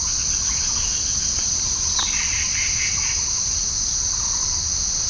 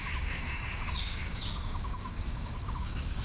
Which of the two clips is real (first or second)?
first